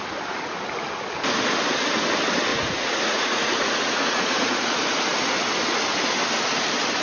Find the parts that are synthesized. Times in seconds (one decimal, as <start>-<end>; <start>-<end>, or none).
2.5-4.7